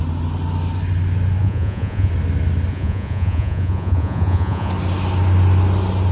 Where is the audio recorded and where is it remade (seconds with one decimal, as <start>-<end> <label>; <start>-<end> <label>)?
0.0-1.4 recorded; 1.4-2.1 remade; 2.1-2.7 recorded; 2.7-4.7 remade; 4.7-6.1 recorded

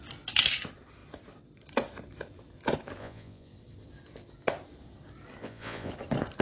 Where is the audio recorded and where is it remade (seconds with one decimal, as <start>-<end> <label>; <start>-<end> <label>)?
0.0-3.0 recorded; 3.0-3.5 remade; 3.5-5.4 recorded; 5.4-5.9 remade; 5.9-6.4 recorded

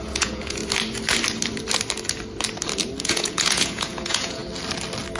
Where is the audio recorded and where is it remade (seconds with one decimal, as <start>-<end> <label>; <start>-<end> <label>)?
0.0-0.6 remade; 0.6-3.0 recorded; 3.0-4.4 remade; 4.4-5.2 recorded